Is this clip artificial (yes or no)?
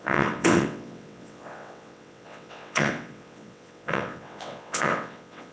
yes